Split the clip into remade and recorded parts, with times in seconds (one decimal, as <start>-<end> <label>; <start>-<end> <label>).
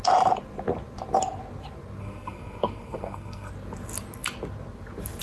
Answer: 0.0-2.0 recorded; 2.0-3.5 remade; 3.5-5.2 recorded